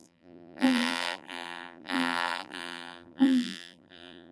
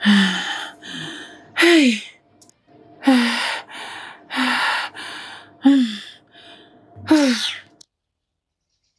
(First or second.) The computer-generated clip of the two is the first